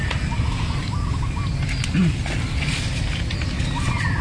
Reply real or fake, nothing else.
real